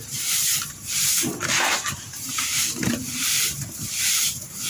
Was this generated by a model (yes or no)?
yes